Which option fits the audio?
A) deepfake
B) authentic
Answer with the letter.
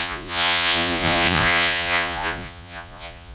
A